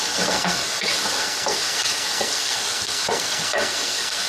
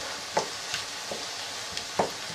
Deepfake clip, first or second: first